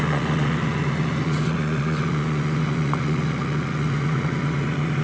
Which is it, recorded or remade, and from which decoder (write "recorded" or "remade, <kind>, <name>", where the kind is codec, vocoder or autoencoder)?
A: remade, vocoder, Vocos